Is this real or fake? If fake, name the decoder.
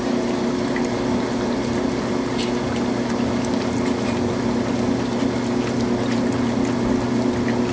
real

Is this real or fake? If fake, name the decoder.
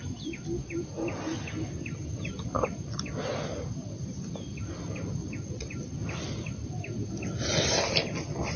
real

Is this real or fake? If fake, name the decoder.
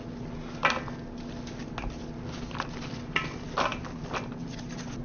real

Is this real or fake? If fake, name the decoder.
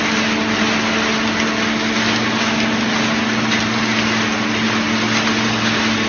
real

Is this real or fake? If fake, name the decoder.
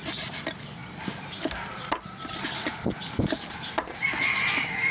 real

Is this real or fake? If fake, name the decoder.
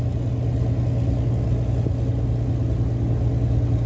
real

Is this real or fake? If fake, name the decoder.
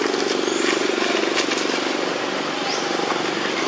real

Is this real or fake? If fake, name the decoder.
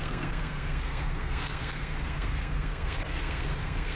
fake, codec, SNAC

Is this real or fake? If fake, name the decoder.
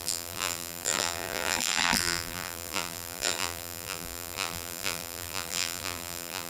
fake, vocoder, BigVGAN v2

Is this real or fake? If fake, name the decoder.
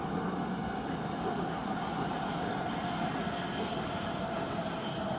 real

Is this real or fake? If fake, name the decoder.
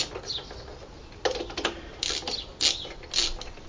real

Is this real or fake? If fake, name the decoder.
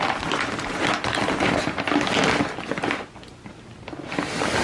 real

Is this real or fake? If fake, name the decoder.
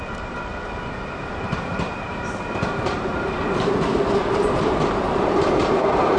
fake, vocoder, BigVGAN v2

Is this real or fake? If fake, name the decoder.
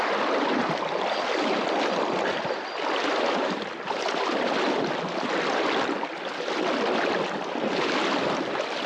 real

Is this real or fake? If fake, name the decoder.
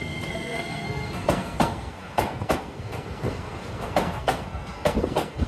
fake, codec, SNAC